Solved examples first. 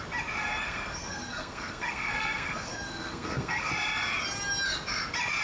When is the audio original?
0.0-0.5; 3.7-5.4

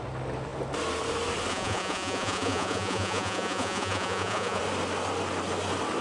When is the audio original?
0.0-1.5; 4.6-6.0

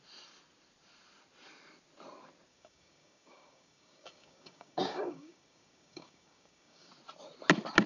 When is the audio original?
0.0-2.5; 6.9-7.9

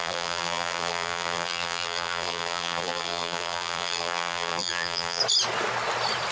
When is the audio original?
5.2-6.3